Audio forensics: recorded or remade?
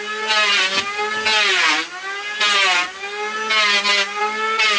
recorded